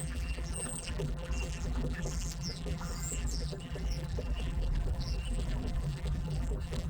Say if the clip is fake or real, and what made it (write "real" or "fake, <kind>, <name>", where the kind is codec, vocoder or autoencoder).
fake, vocoder, BigVGAN v2